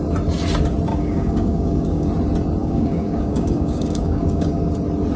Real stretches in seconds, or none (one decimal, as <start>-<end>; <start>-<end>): 0.0-0.9; 2.1-2.6; 4.7-5.2